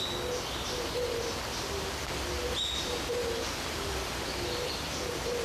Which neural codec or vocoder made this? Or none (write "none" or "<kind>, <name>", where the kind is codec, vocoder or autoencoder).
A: none